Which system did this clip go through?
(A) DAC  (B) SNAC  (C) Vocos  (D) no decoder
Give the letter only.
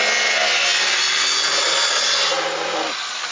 D